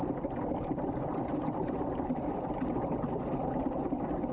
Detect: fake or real real